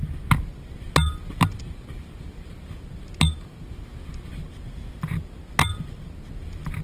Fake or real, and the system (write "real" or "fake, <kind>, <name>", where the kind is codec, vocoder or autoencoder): real